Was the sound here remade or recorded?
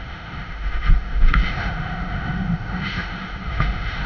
remade